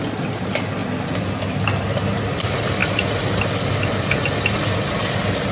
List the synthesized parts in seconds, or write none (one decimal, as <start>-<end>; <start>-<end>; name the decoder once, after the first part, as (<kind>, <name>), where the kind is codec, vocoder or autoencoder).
none